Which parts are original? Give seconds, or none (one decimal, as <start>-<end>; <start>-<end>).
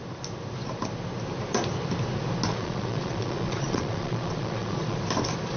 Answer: 0.0-2.5; 5.0-5.6